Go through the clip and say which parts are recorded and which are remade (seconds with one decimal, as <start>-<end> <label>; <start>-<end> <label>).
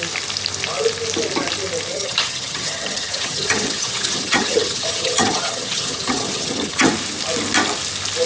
0.0-1.9 recorded; 1.9-6.9 remade; 6.9-8.3 recorded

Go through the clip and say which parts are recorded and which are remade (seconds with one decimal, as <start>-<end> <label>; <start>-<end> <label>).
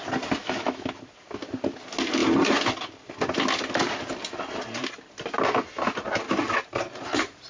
0.0-0.4 recorded; 0.4-0.9 remade; 0.9-7.5 recorded